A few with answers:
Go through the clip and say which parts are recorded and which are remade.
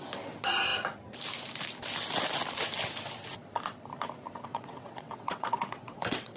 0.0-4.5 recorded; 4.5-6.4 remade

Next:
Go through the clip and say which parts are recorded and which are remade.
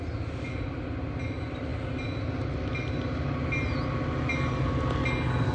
0.0-5.5 recorded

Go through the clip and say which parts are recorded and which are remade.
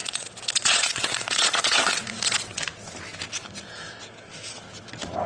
0.0-2.6 remade; 2.6-5.3 recorded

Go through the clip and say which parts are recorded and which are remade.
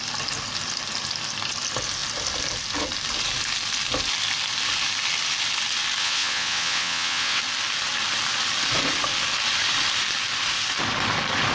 0.0-6.0 recorded; 6.0-7.4 remade; 7.4-11.5 recorded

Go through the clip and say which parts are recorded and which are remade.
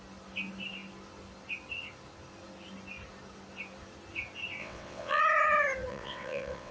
0.0-4.6 recorded; 4.6-5.2 remade; 5.2-5.9 recorded; 5.9-6.7 remade